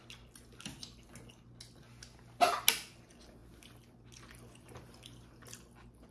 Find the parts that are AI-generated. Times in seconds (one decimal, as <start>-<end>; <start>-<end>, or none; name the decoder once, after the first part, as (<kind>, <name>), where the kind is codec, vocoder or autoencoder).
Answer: none